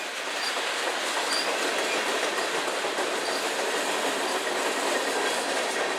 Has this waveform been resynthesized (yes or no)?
no